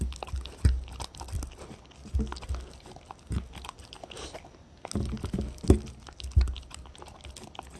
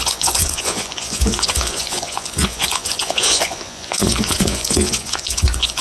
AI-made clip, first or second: second